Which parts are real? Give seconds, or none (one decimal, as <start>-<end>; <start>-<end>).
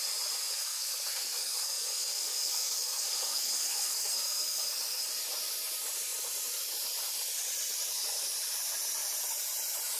0.0-0.5; 5.0-10.0